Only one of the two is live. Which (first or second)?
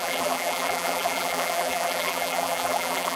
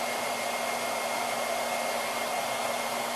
second